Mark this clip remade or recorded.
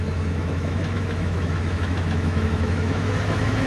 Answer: remade